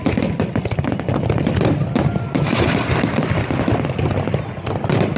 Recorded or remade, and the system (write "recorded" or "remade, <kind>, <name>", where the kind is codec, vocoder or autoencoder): recorded